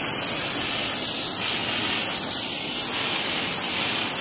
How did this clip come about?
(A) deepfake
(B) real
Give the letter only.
B